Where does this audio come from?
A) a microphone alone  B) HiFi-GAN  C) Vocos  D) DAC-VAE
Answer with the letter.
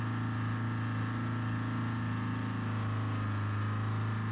A